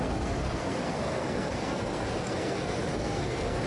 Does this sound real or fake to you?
fake